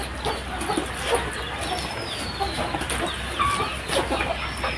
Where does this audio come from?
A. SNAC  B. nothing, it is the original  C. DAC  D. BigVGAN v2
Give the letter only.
B